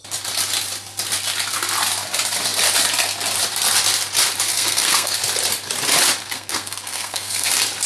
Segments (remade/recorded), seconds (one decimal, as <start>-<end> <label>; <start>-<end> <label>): 0.0-4.5 recorded; 4.5-5.2 remade; 5.2-6.2 recorded; 6.2-7.5 remade; 7.5-7.9 recorded